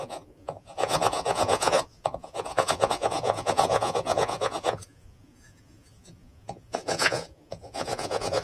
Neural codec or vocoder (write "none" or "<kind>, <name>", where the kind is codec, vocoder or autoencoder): vocoder, Vocos